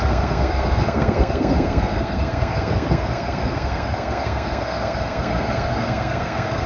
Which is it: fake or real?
fake